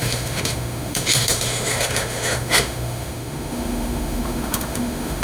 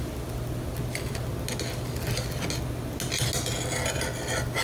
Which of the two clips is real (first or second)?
second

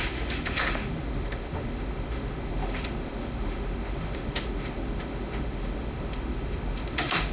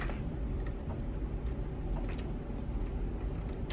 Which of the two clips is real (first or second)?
second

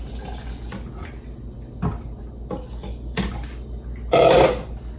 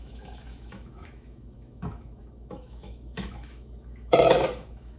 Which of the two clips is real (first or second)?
first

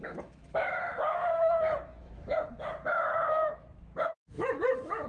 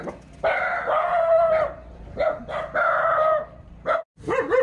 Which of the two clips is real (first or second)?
second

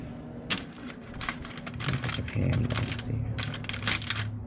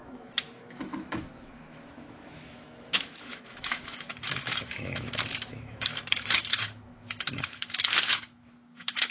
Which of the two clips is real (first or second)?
first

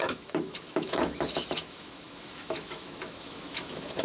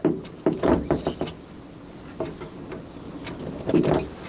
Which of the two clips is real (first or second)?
second